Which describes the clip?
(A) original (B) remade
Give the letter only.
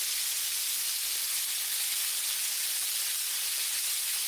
A